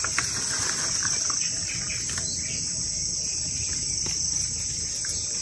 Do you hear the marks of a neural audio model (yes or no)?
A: no